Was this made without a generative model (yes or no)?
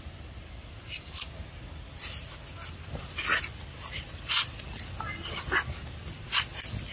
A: yes